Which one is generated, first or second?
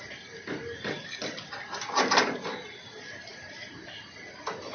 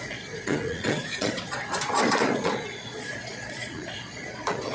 second